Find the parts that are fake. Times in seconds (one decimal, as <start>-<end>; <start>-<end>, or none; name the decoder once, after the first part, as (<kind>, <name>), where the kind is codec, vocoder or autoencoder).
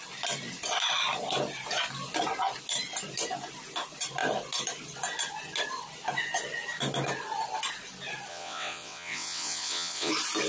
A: 8.3-10.1 (vocoder, WaveNeXt)